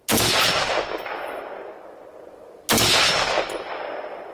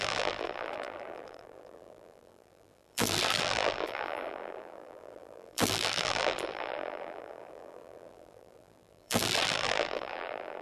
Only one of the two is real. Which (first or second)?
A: first